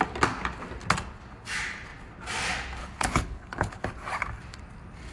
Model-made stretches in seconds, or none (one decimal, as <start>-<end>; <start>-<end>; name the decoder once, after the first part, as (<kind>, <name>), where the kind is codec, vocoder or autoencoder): 2.8-3.8 (codec, HILCodec)